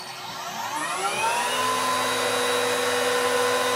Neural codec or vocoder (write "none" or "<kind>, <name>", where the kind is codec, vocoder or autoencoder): none